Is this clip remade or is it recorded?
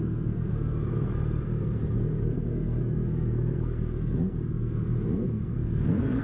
remade